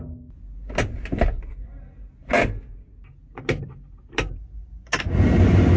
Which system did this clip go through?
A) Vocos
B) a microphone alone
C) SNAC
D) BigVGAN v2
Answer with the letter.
B